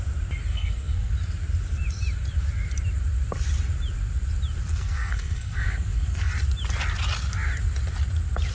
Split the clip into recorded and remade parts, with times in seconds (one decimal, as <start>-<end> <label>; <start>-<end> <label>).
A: 0.0-0.5 recorded; 0.5-1.1 remade; 1.1-4.7 recorded; 4.7-6.3 remade; 6.3-8.5 recorded